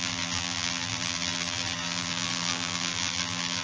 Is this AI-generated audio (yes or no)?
yes